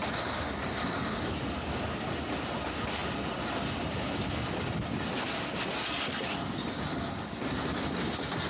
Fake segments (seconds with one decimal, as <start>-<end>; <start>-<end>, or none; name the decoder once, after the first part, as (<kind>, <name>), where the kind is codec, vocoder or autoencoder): none

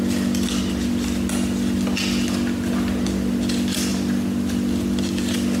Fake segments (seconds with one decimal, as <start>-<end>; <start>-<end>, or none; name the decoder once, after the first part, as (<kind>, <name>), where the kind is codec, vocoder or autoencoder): none

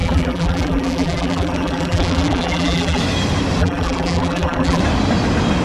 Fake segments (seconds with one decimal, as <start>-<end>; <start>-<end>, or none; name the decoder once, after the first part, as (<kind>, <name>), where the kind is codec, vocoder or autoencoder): 0.0-3.0 (vocoder, BigVGAN v2); 3.6-4.8

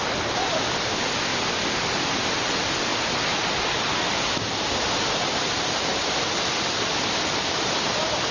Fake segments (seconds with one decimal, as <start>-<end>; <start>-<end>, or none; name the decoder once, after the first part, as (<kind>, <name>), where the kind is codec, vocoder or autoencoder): 0.0-1.3 (vocoder, BigVGAN v2); 2.5-2.9; 3.6-8.3

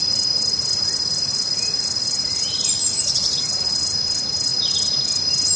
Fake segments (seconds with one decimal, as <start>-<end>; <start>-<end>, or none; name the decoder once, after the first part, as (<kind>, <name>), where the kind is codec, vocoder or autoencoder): 0.0-3.4 (vocoder, BigVGAN v2)

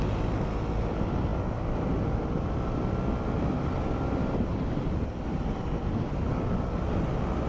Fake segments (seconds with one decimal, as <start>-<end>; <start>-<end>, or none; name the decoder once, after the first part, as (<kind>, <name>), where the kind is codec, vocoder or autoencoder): 1.3-1.9 (vocoder, BigVGAN v2); 4.5-6.3